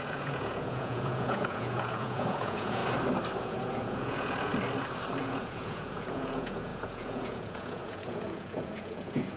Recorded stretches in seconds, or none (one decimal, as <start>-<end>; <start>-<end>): 2.8-3.4; 4.5-5.2

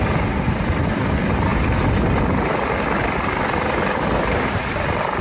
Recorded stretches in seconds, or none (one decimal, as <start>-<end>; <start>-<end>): 0.0-5.2

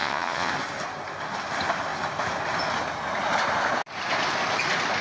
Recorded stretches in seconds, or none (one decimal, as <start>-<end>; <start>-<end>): 0.5-5.0